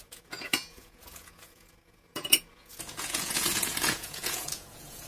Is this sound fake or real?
fake